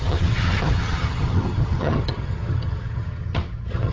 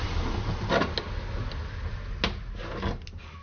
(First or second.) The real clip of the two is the second